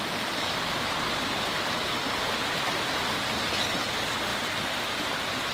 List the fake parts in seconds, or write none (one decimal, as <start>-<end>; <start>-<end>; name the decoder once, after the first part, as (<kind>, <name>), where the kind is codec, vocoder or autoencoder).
none